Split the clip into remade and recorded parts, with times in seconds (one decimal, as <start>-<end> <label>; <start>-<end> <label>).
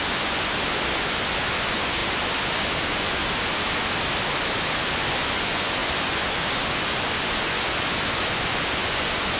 0.0-2.0 remade; 2.0-2.5 recorded; 2.5-3.2 remade; 3.2-4.6 recorded; 4.6-9.4 remade